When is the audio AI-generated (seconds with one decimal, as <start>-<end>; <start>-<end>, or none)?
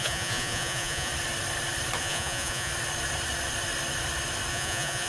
0.0-1.1; 2.0-2.7; 4.5-5.1